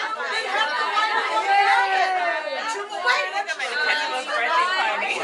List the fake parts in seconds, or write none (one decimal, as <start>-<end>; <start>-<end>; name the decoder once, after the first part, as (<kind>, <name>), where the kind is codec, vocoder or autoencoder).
0.0-0.5 (vocoder, BigVGAN v2); 3.6-5.2